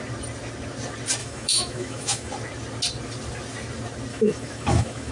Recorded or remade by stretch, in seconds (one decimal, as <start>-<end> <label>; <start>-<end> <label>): 0.0-1.2 recorded; 1.2-2.3 remade; 2.3-4.1 recorded; 4.1-5.1 remade